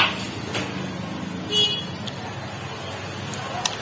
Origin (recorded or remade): recorded